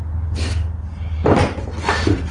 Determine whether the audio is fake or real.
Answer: real